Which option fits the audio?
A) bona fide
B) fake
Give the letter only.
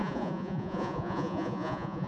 B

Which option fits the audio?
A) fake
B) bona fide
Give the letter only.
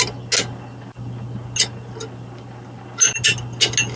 B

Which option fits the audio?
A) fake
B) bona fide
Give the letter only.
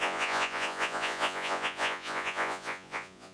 A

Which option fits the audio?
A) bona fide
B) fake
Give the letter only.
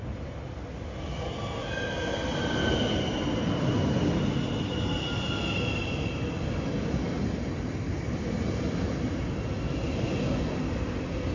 A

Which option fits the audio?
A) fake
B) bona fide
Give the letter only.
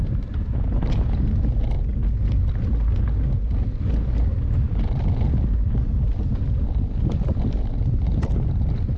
B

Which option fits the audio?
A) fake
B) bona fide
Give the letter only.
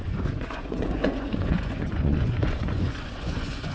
A